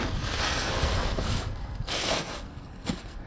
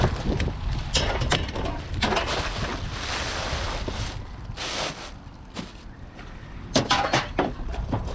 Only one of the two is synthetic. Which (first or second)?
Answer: first